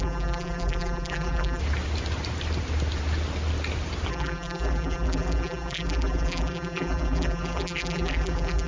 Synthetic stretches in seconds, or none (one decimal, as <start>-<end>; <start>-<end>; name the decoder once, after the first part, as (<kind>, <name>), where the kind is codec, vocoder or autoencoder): 0.0-1.6 (vocoder, BigVGAN v2); 4.1-8.7